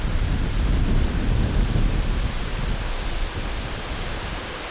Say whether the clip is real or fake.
real